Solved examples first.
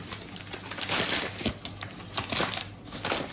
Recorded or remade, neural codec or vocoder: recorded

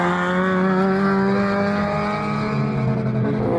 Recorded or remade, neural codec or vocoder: recorded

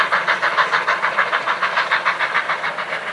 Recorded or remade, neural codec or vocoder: recorded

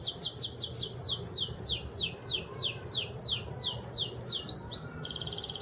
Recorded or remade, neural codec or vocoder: recorded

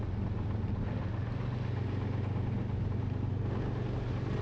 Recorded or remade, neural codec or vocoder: recorded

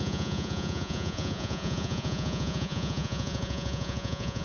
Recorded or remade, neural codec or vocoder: remade, vocoder, Vocos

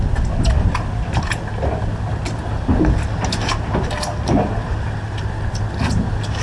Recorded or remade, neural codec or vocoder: recorded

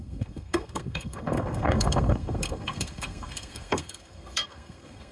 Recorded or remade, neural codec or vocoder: remade, codec, SNAC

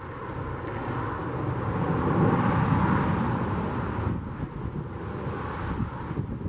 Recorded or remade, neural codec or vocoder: recorded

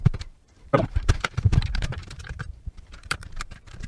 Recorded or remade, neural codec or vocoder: remade, vocoder, BigVGAN v2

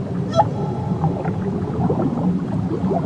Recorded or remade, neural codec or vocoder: recorded